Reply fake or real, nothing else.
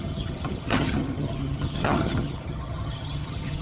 fake